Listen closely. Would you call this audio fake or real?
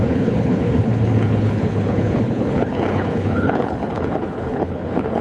fake